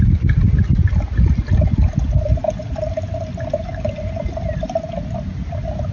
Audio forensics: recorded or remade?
recorded